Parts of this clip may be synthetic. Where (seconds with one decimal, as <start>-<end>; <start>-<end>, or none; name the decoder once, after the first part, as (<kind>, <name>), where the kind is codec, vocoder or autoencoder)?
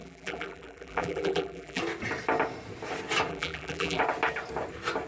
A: 0.0-1.8 (vocoder, BigVGAN v2); 3.3-4.0